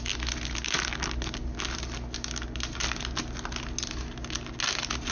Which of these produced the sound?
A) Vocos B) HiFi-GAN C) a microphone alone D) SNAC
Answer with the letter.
C